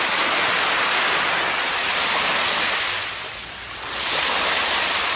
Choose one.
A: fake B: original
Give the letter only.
A